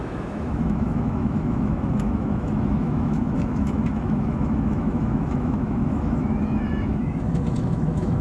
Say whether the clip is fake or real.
fake